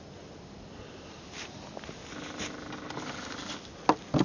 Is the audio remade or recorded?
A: recorded